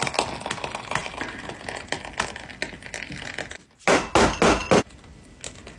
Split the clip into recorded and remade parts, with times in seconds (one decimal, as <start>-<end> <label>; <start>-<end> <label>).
0.0-5.8 recorded